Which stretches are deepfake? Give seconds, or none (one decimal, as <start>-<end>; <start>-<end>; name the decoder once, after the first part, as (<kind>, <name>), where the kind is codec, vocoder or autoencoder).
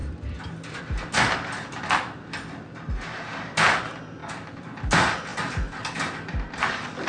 none